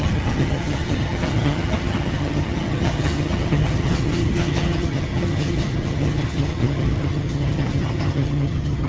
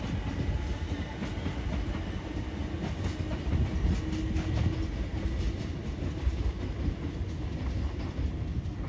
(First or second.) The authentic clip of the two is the second